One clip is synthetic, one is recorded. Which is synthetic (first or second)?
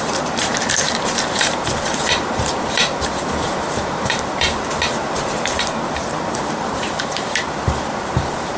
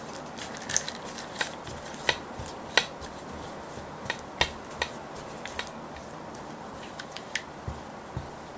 first